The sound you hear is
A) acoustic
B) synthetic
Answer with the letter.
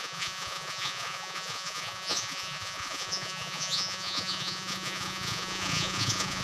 B